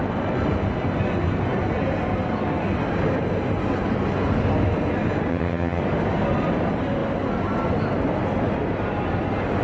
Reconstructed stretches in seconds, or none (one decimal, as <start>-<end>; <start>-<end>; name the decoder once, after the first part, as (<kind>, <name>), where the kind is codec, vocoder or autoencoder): 5.3-5.8 (vocoder, HiFi-GAN)